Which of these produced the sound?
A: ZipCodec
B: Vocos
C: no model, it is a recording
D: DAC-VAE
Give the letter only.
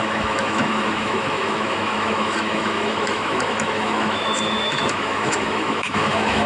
D